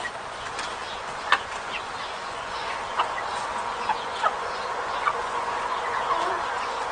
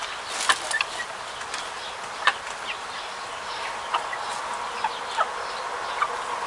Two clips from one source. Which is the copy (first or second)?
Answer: first